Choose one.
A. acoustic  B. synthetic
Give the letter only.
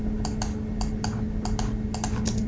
A